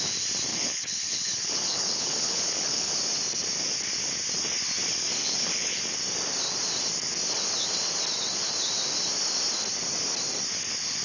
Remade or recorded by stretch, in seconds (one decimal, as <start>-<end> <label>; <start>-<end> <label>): 0.0-0.5 recorded; 0.5-2.9 remade; 2.9-5.2 recorded; 5.2-5.8 remade; 5.8-11.0 recorded